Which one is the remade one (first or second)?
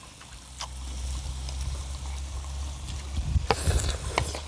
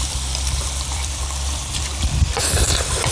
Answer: second